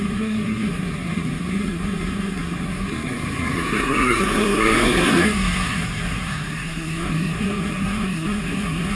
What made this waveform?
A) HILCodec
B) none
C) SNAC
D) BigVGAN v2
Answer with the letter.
C